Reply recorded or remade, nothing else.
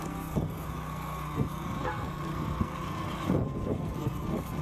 remade